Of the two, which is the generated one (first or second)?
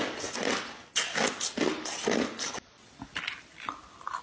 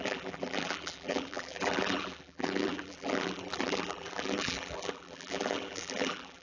second